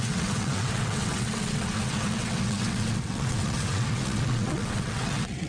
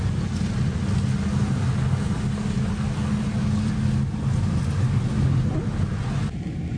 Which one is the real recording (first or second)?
second